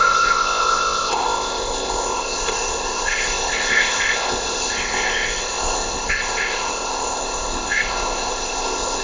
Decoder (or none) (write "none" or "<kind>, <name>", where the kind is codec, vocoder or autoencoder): codec, ZipCodec